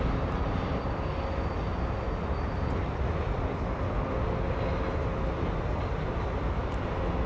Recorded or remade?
recorded